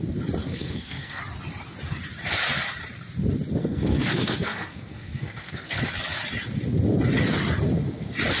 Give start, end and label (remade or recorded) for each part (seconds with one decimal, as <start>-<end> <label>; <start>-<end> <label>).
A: 0.0-0.4 recorded; 0.4-1.2 remade; 1.2-3.6 recorded; 3.6-5.8 remade; 5.8-8.4 recorded